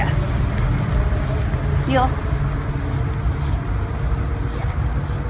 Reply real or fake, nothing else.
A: real